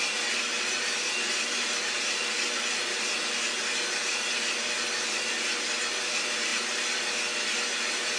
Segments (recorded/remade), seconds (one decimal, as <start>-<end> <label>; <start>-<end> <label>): 0.0-8.2 recorded